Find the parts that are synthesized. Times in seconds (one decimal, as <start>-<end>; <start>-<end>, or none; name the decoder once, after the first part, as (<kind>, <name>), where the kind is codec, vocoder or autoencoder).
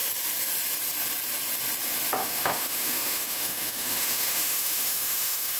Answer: 2.2-5.6 (autoencoder, DAC-VAE)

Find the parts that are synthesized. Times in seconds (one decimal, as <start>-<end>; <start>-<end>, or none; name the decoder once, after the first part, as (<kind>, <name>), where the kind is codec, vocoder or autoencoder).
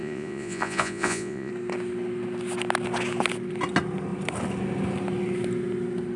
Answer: 0.0-1.5 (vocoder, Vocos)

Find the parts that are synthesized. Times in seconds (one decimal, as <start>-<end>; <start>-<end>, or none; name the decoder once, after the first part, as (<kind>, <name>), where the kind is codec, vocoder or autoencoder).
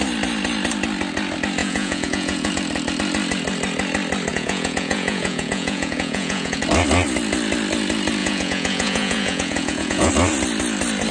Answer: 1.6-2.5 (vocoder, Vocos); 4.3-6.6; 8.2-10.1